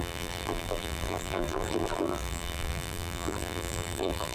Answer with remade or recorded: remade